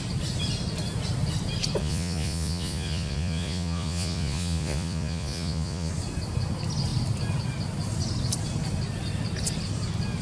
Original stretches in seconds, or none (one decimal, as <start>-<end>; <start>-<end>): 0.0-1.8; 5.9-10.2